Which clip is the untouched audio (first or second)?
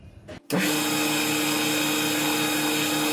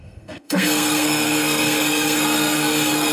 first